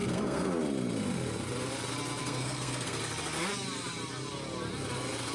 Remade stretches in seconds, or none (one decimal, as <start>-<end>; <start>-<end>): 0.0-0.5; 2.2-3.0